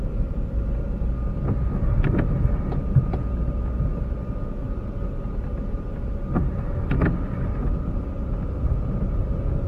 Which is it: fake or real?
real